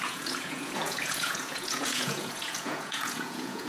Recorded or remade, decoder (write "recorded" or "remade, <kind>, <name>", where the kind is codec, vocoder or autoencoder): remade, vocoder, Vocos